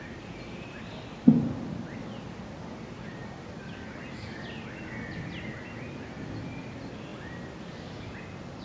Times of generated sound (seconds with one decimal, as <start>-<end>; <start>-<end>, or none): none